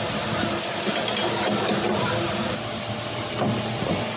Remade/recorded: recorded